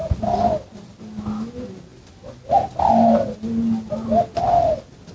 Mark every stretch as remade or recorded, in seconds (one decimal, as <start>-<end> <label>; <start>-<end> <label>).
0.0-5.1 recorded